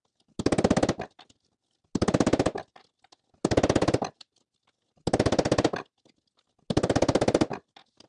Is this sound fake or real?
real